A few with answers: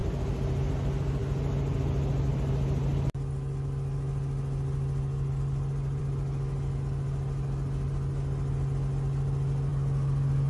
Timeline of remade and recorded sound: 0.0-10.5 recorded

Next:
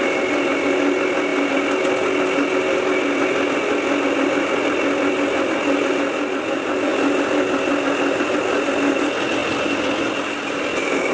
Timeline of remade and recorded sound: 0.0-11.1 recorded